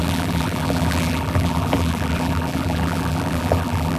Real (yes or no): no